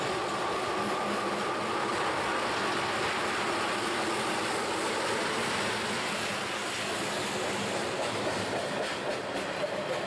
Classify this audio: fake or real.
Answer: real